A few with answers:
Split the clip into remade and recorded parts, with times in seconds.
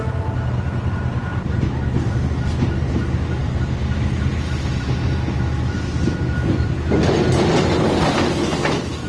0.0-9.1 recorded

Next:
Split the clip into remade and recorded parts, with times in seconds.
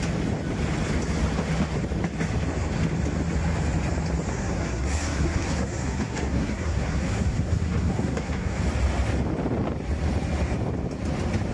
0.0-4.3 recorded; 4.3-8.6 remade; 8.6-11.5 recorded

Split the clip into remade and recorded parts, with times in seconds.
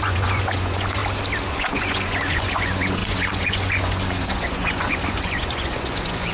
0.0-1.0 remade; 1.0-1.5 recorded; 1.5-6.3 remade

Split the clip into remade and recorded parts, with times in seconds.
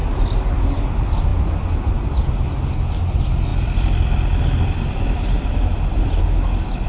0.0-1.3 recorded; 1.3-2.2 remade; 2.2-3.5 recorded; 3.5-6.2 remade; 6.2-6.9 recorded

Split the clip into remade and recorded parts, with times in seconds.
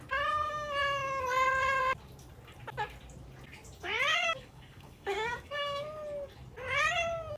0.0-4.1 recorded; 4.1-5.8 remade; 5.8-7.4 recorded